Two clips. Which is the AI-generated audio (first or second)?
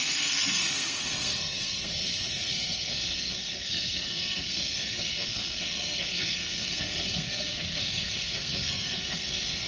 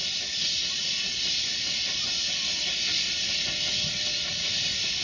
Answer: first